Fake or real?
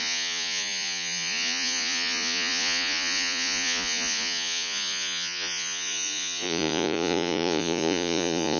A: fake